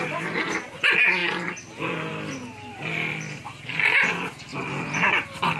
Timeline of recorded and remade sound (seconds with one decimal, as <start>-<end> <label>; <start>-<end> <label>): 0.0-1.2 remade; 1.2-2.1 recorded; 2.1-5.6 remade